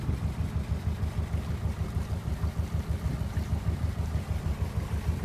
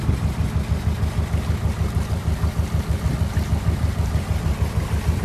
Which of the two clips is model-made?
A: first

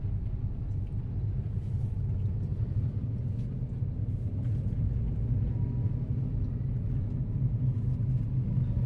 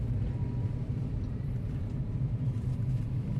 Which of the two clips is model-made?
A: second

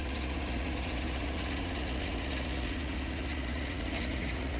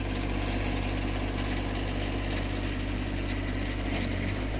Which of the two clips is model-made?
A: first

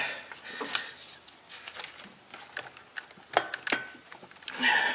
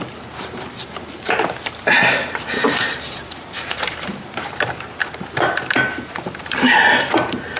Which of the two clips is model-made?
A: second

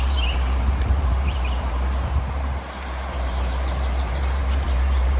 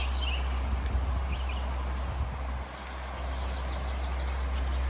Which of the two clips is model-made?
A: first